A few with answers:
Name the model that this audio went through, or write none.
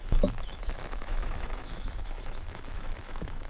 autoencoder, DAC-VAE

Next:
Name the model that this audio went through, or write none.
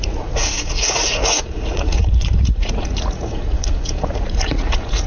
vocoder, Vocos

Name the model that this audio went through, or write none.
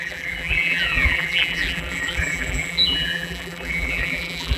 vocoder, BigVGAN v2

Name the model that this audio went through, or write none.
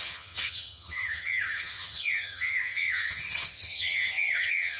vocoder, HiFi-GAN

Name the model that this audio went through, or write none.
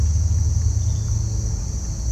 none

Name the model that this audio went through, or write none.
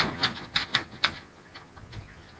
vocoder, Vocos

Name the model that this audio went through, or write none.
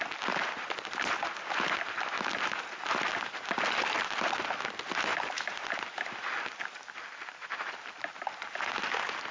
none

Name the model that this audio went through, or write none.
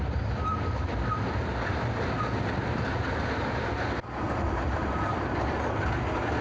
none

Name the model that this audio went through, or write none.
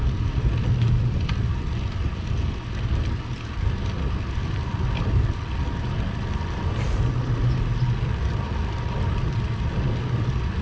none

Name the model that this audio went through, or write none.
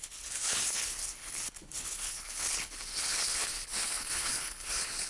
codec, HILCodec